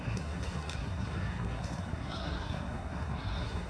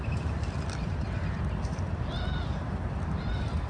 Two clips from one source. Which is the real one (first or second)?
second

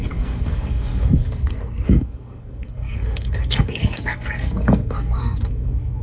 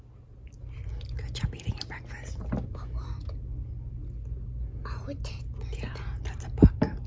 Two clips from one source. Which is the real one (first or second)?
second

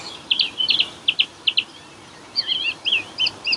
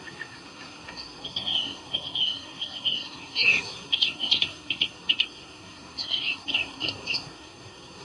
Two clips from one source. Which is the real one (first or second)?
first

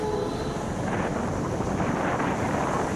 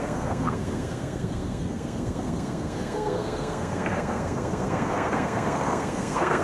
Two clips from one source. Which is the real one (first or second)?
first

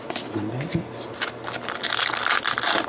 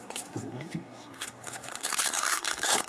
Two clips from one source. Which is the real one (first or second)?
first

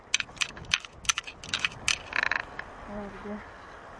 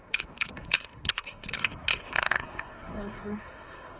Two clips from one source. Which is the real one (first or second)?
first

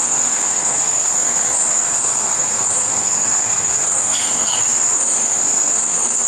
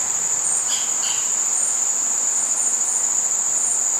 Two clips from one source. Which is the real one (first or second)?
second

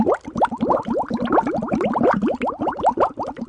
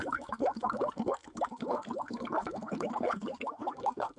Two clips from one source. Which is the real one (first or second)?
first